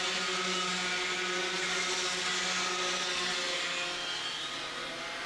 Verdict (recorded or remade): recorded